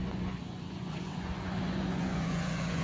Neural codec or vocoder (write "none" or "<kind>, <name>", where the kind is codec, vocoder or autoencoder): vocoder, Vocos